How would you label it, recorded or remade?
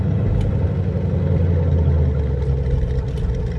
recorded